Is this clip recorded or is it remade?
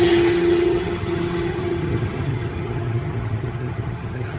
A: remade